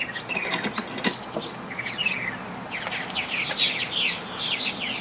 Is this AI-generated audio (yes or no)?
no